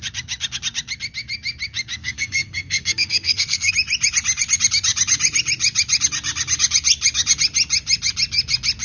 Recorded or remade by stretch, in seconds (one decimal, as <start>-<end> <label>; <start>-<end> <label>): 0.0-2.0 recorded; 2.0-3.7 remade; 3.7-8.8 recorded